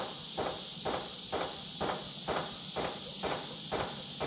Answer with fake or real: fake